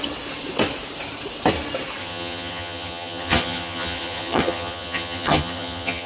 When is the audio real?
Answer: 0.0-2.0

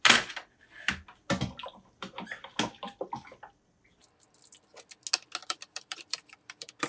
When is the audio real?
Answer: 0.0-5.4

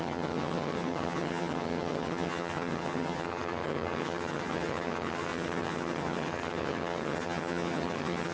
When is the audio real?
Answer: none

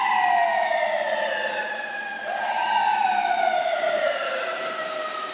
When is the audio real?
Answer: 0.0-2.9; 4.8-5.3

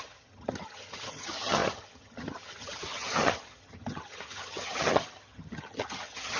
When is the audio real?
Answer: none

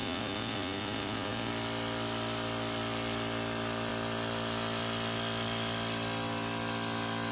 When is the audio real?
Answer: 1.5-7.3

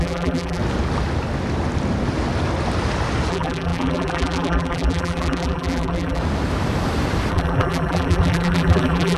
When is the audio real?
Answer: 0.6-3.3; 6.2-7.3

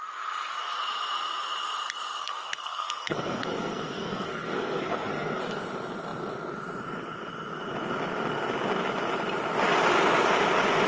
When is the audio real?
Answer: 0.0-2.2; 5.4-10.9